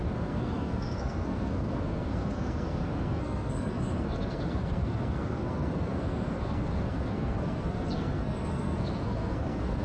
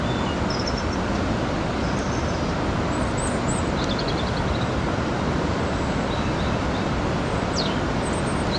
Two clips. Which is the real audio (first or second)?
second